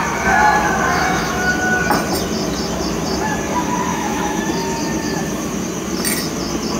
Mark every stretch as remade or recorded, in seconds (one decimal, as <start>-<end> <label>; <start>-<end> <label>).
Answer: 0.0-0.9 recorded; 0.9-1.5 remade; 1.5-3.9 recorded; 3.9-4.4 remade; 4.4-6.8 recorded